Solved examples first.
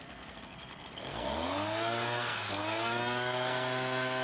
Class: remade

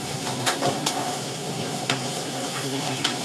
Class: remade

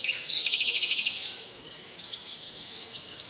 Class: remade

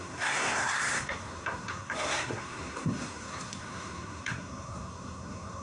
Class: remade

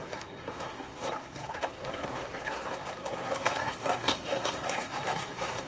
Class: remade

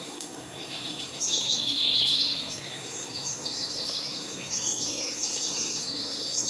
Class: remade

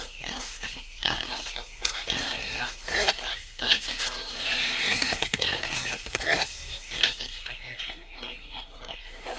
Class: remade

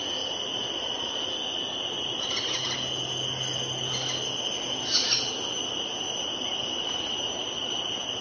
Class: recorded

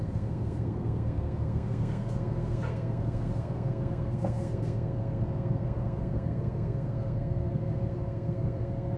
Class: remade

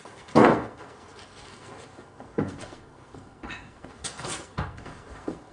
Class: remade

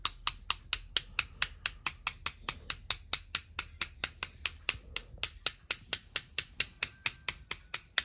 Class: recorded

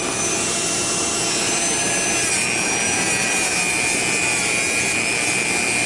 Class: recorded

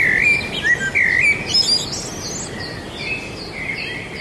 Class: recorded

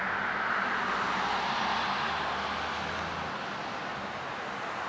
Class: recorded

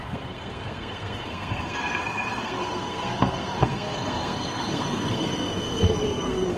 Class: remade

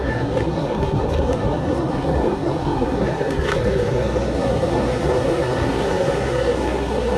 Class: remade